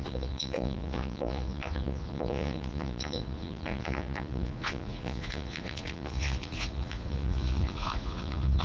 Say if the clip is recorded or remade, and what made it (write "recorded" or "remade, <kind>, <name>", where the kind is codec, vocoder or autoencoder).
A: remade, vocoder, Vocos